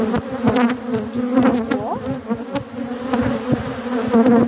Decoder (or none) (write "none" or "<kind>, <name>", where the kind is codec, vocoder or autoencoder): none